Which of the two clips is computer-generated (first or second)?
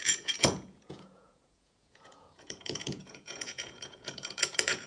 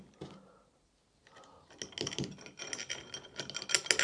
first